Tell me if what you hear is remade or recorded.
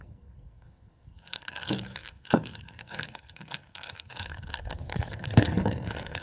remade